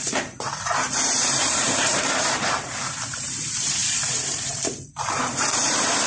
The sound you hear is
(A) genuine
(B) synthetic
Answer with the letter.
B